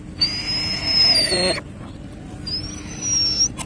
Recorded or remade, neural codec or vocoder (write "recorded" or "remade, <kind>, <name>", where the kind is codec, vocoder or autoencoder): recorded